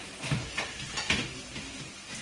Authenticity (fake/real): real